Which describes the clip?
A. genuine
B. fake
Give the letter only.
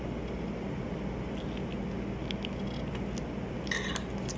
A